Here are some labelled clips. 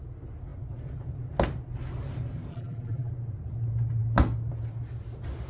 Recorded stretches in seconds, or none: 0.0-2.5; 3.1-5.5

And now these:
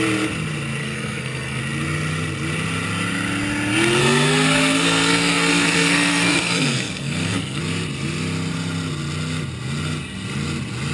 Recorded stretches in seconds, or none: 0.0-0.8; 1.6-4.0; 7.6-10.9

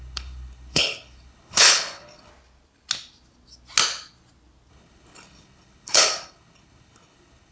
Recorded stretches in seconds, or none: 2.3-4.7

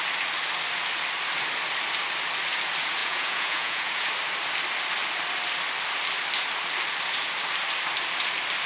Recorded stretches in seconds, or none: 0.0-3.0; 4.1-8.7

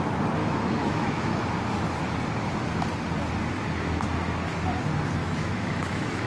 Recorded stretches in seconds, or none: 0.0-0.4; 1.3-5.2

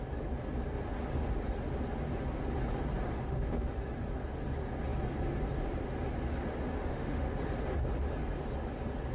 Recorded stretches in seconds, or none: 0.0-3.2; 3.7-6.6; 7.3-9.1

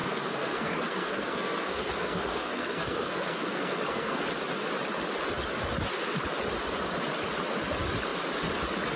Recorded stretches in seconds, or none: 4.2-9.0

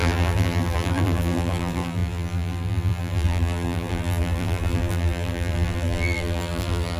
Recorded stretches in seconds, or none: none